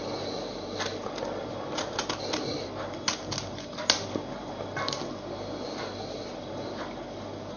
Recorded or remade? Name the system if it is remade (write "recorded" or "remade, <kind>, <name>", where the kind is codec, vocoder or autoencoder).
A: recorded